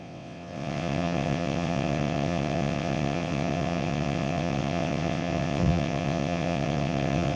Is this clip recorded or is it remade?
remade